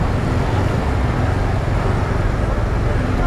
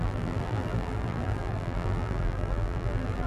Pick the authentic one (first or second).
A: first